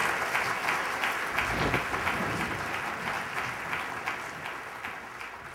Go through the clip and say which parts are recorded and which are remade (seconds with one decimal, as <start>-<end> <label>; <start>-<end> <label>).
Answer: 0.0-5.5 recorded